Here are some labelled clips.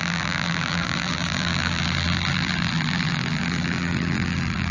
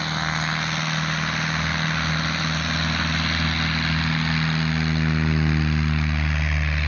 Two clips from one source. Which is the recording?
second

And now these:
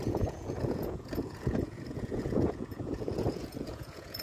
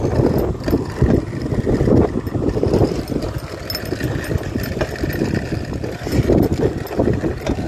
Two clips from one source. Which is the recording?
second